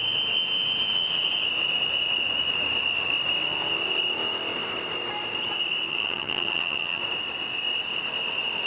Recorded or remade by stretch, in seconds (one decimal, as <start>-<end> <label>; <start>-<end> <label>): 0.0-5.9 recorded; 5.9-7.0 remade; 7.0-8.7 recorded